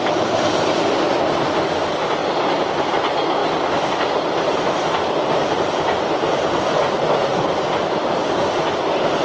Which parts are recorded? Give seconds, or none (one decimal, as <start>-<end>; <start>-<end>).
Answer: 0.0-9.2